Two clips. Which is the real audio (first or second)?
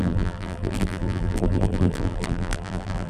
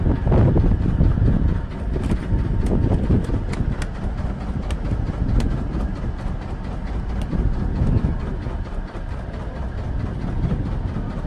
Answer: second